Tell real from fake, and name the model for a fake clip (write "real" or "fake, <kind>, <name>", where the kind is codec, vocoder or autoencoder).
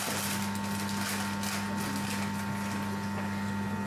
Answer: real